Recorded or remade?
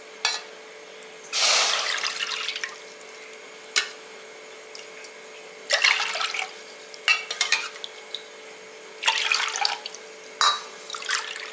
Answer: recorded